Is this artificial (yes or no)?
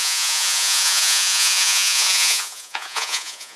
yes